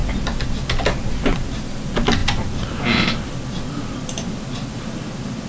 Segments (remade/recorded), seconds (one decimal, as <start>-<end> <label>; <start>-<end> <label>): 0.0-5.5 recorded